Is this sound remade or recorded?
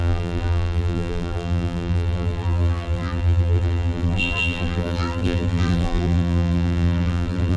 remade